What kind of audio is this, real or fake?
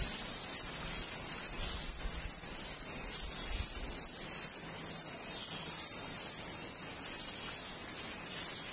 real